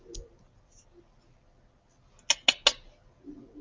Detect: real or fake real